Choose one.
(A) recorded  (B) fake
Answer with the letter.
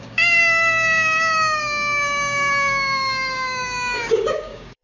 B